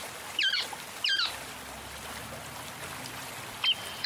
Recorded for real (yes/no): yes